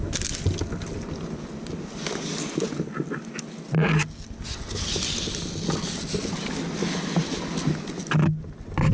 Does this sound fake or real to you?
real